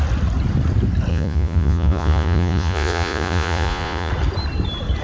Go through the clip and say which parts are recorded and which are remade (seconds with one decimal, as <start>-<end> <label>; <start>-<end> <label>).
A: 0.0-1.1 recorded; 1.1-4.1 remade; 4.1-5.0 recorded